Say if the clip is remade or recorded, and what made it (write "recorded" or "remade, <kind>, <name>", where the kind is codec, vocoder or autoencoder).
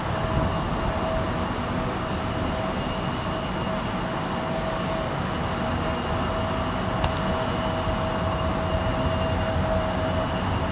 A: recorded